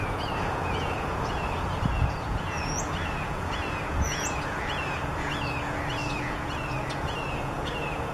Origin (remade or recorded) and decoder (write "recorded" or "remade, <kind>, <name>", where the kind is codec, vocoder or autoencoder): remade, vocoder, Vocos